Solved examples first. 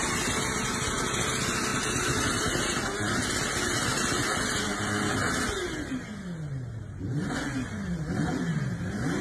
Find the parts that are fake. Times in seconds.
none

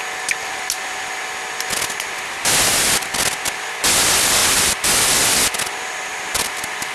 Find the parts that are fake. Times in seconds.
4.4-4.9 (vocoder, BigVGAN v2)

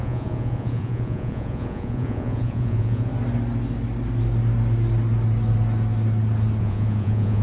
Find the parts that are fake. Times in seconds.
0.0-3.1 (vocoder, Vocos); 6.6-7.4

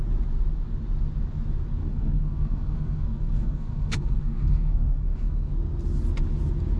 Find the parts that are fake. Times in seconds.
1.8-5.5 (codec, SNAC)

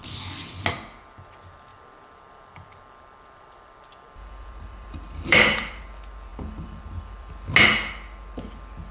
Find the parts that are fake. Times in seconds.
1.7-5.8 (vocoder, BigVGAN v2); 6.3-7.3

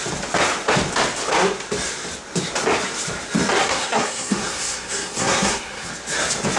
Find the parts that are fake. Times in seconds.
3.6-5.9 (codec, SNAC)